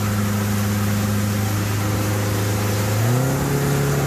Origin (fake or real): real